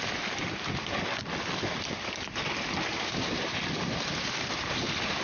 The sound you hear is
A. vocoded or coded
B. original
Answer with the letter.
B